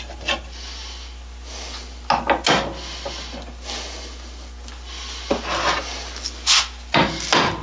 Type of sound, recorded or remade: recorded